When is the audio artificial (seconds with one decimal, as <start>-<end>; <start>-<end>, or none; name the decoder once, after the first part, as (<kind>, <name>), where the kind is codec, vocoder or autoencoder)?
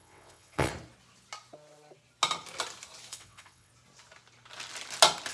0.0-0.7 (vocoder, WaveNeXt); 3.1-3.7